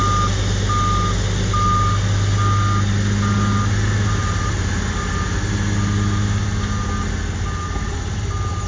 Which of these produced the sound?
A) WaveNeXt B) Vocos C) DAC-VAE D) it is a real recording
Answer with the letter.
D